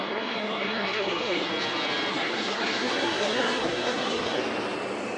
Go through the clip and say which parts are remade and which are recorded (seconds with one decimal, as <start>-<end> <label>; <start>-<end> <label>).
0.0-1.5 remade; 1.5-2.1 recorded; 2.1-4.4 remade; 4.4-5.2 recorded